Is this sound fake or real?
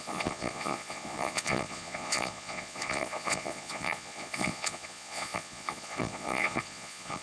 fake